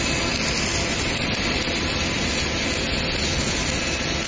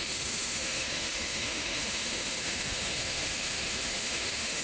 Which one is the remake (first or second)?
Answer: second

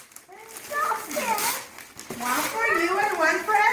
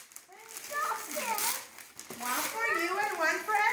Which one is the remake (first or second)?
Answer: first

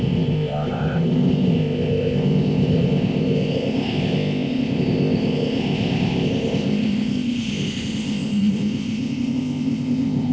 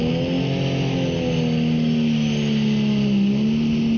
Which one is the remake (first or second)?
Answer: first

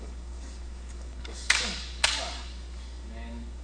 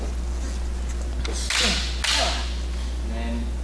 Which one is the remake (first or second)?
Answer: first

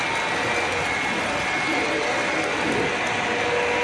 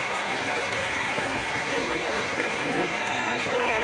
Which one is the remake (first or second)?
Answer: second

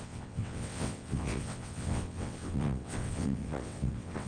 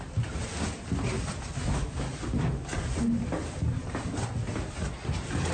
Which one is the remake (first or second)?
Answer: first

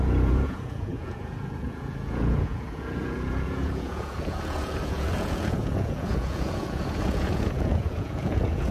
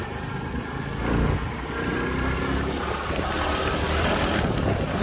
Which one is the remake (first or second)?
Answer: first